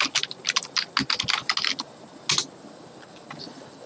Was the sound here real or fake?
real